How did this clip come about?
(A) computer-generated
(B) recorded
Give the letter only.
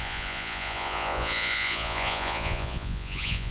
A